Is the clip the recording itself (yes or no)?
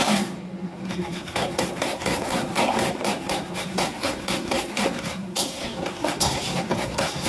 no